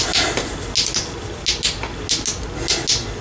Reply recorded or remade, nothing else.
recorded